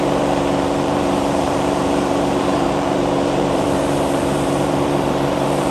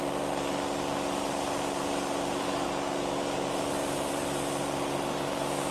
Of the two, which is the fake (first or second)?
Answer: first